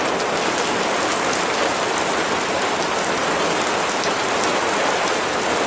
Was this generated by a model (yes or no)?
no